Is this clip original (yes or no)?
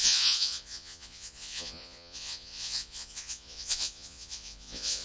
no